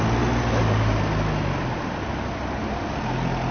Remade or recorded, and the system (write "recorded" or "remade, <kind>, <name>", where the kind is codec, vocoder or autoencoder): recorded